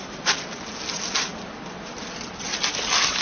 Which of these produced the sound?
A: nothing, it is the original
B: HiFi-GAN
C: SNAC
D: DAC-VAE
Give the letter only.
A